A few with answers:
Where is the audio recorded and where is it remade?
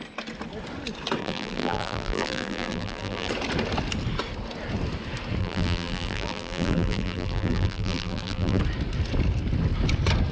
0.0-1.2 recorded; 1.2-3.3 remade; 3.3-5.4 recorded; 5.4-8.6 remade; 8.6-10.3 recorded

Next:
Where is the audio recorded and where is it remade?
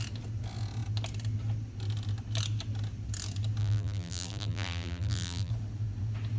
0.0-3.6 recorded; 3.6-5.5 remade; 5.5-6.4 recorded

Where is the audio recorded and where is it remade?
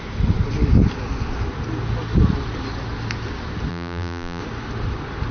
0.0-3.7 recorded; 3.7-4.4 remade; 4.4-5.3 recorded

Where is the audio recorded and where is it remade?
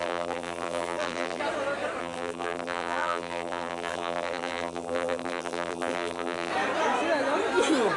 0.0-1.4 remade; 1.4-2.0 recorded; 2.0-6.5 remade; 6.5-8.0 recorded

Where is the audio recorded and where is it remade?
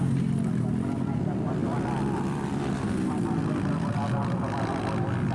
0.0-5.3 recorded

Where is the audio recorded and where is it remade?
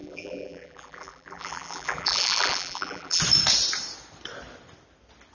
0.0-3.2 remade; 3.2-5.3 recorded